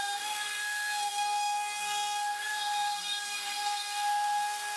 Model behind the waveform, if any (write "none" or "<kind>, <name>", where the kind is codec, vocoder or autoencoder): codec, SNAC